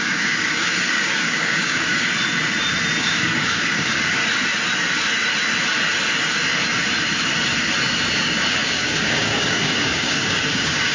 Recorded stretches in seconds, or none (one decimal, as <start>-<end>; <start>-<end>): 1.9-3.0; 4.2-8.2